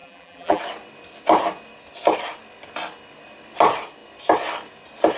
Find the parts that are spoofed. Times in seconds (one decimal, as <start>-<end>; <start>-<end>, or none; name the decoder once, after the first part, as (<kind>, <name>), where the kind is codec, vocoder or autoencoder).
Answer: 0.0-0.6 (vocoder, BigVGAN v2)